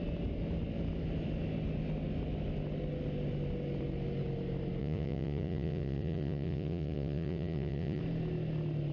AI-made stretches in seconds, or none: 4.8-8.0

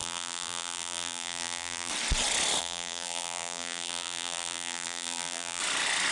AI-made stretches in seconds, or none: 0.0-1.9; 2.6-5.6

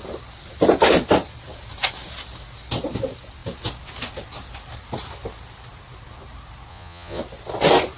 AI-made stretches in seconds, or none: 6.7-7.2

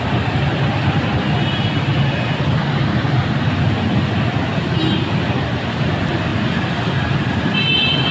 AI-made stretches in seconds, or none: none

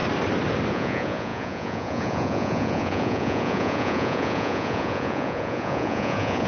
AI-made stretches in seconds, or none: 0.7-6.5